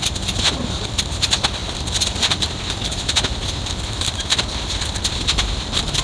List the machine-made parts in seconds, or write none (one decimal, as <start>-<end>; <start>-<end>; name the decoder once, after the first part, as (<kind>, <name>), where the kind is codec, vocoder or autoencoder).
0.0-6.0 (vocoder, BigVGAN v2)